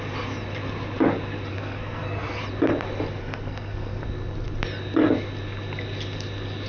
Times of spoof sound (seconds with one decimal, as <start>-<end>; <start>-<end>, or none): 1.5-2.4; 3.2-4.0